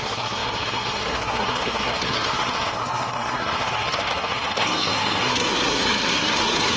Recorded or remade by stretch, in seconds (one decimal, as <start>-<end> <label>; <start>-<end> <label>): 0.0-6.8 remade

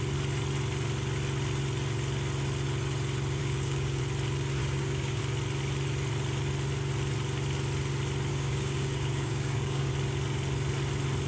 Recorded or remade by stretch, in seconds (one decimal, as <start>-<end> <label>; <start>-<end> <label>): 0.0-3.4 recorded; 3.4-4.0 remade; 4.0-4.6 recorded; 4.6-5.2 remade; 5.2-8.3 recorded; 8.3-9.9 remade; 9.9-11.3 recorded

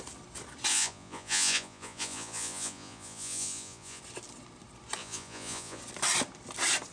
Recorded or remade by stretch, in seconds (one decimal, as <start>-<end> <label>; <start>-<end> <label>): 0.0-0.7 recorded; 0.7-4.0 remade; 4.0-5.0 recorded; 5.0-5.8 remade; 5.8-6.9 recorded